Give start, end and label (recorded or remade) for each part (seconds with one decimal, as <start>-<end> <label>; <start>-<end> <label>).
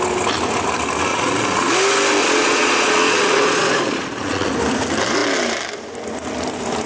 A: 0.0-1.1 recorded; 1.1-1.7 remade; 1.7-2.2 recorded; 2.2-4.5 remade; 4.5-6.9 recorded